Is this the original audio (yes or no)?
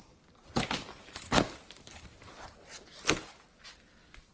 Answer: yes